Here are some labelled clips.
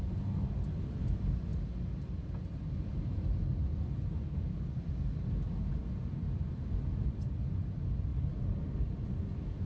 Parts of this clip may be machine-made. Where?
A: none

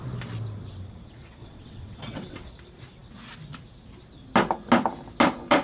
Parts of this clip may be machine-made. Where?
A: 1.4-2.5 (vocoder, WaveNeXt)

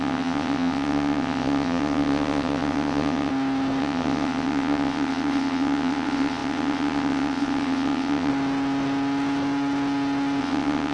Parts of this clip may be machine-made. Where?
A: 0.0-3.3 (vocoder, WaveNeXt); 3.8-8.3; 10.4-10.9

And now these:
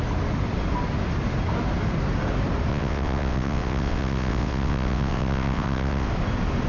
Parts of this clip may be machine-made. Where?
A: 2.7-6.1 (vocoder, WaveNeXt)

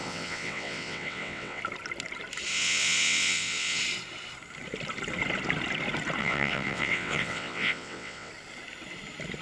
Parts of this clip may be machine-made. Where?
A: 0.0-1.6 (vocoder, WaveNeXt); 2.5-3.8; 6.2-8.3

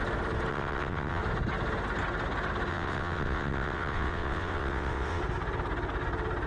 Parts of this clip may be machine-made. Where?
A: 0.5-1.2 (vocoder, WaveNeXt); 2.7-5.2

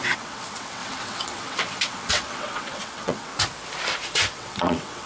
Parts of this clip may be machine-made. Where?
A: 0.0-3.3 (vocoder, WaveNeXt); 4.3-5.1